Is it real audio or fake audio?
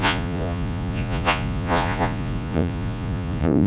fake